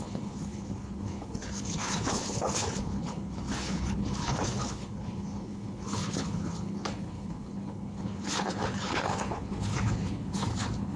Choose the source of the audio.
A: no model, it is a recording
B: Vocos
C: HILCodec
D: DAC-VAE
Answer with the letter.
C